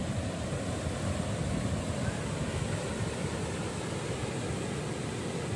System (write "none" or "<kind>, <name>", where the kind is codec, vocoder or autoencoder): none